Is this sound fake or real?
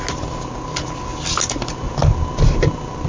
real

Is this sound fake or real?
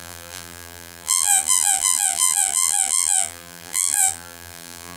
fake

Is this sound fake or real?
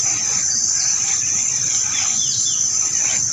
real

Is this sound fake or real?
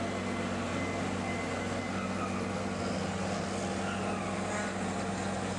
real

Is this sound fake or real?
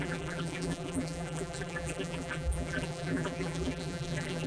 fake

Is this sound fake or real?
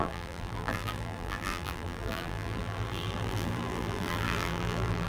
fake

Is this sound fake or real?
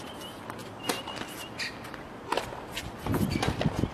real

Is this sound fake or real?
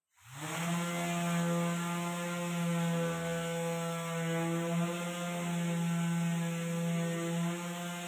real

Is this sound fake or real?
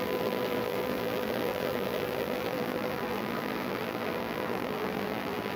fake